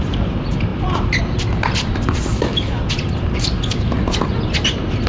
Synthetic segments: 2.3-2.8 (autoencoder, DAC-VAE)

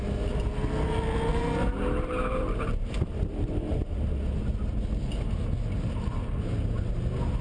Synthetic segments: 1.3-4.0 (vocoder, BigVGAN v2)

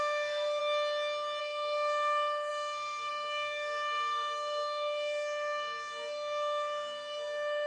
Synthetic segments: 0.0-0.6 (codec, SNAC); 1.4-7.7

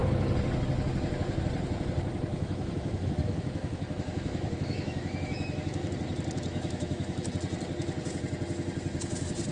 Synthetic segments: 2.3-5.9 (autoencoder, DAC-VAE); 6.5-7.3

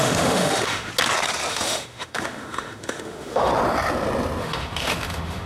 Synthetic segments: 0.0-0.9 (autoencoder, DAC-VAE); 1.5-3.5; 4.4-5.5

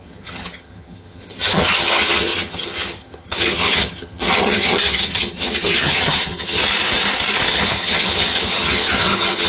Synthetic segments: 0.0-6.6 (vocoder, HiFi-GAN); 7.5-9.5